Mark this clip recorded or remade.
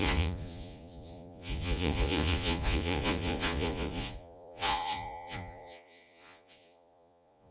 remade